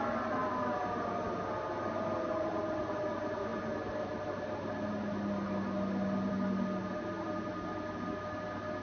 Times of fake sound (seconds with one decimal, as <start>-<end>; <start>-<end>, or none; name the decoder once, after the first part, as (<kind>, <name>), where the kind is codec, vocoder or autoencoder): none